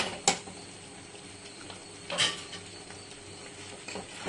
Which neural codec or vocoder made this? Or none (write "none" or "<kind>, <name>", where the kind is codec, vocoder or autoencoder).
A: none